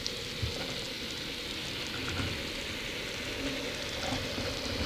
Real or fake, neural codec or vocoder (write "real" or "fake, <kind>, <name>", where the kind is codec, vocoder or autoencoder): real